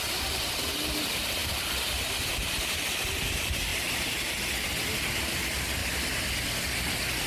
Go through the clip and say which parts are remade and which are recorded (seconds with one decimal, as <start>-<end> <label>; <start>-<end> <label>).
0.0-7.3 recorded